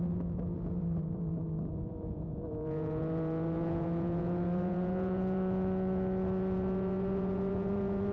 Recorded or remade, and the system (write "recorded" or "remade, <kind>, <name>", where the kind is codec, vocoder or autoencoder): remade, vocoder, Vocos